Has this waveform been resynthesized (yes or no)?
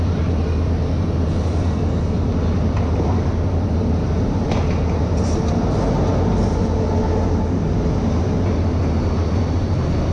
no